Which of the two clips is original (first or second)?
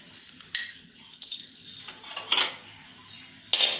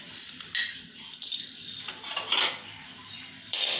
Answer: first